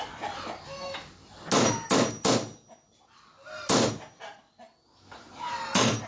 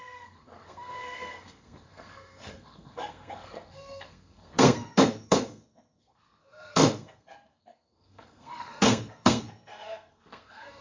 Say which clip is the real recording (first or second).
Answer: first